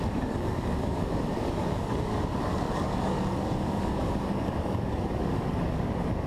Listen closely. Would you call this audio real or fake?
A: fake